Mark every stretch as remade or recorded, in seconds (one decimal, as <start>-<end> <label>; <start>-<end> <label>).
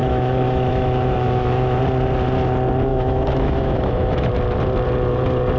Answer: 0.0-1.8 remade; 1.8-2.9 recorded; 2.9-4.3 remade; 4.3-5.6 recorded